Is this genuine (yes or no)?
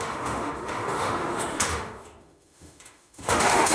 no